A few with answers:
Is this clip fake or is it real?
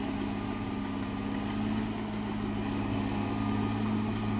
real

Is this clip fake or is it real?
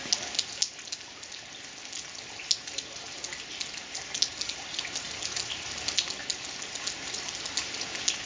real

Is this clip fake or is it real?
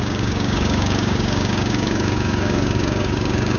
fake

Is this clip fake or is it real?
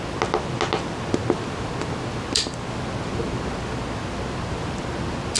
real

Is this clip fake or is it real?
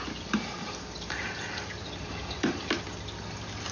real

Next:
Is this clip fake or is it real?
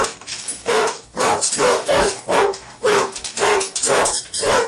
fake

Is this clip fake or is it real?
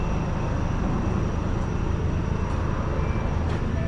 real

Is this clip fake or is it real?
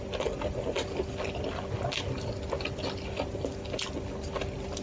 real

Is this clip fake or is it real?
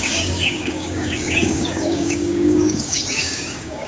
fake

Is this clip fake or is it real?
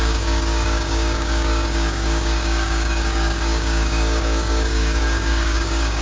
fake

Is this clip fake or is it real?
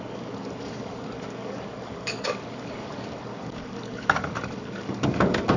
fake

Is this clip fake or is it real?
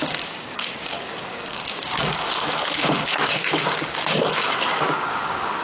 fake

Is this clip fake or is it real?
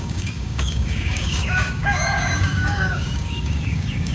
fake